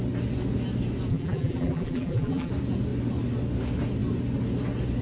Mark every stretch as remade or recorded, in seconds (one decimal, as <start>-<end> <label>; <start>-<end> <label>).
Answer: 0.0-1.1 recorded; 1.1-2.5 remade; 2.5-5.0 recorded